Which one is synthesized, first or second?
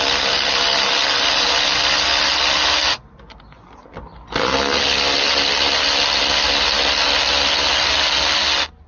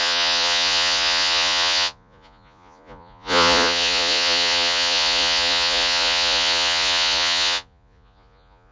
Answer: second